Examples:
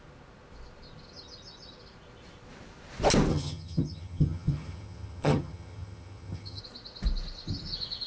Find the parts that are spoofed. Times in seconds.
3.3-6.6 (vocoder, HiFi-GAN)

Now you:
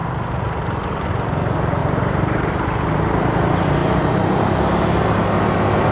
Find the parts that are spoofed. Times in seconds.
0.0-1.1 (vocoder, BigVGAN v2); 1.8-3.4; 3.8-5.2

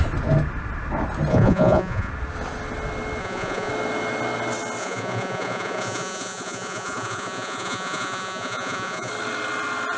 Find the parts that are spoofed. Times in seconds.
1.3-2.1 (vocoder, Vocos); 3.2-3.7; 4.8-9.1

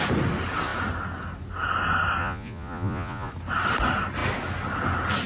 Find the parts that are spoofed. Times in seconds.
2.2-3.3 (vocoder, Vocos)

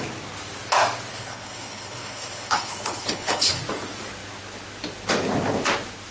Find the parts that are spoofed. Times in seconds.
1.1-3.6 (codec, HILCodec)

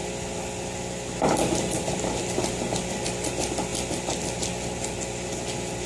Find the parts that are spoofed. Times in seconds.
none

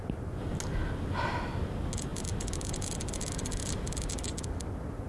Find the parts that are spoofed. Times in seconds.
none

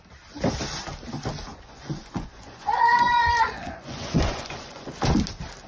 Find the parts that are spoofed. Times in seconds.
1.5-4.9 (vocoder, Vocos)